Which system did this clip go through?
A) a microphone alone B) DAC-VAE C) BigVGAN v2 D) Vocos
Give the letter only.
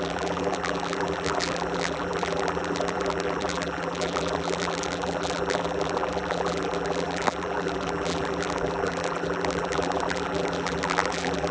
C